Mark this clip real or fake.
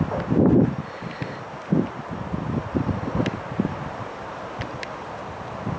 real